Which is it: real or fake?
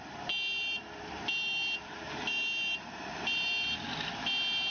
fake